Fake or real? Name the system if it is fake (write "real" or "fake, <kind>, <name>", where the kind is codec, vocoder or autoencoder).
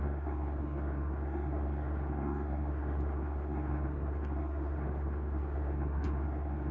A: fake, codec, SNAC